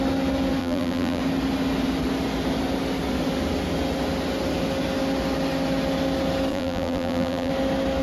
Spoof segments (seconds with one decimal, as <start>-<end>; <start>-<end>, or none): 0.6-1.2; 6.5-7.5